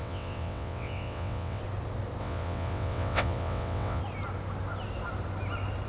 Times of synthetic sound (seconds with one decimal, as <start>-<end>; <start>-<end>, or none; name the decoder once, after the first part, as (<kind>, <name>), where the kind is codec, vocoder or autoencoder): 0.0-1.6 (vocoder, WaveNeXt); 2.2-4.0